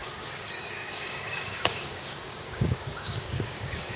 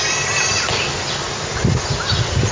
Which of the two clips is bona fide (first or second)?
second